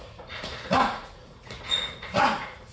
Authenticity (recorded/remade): remade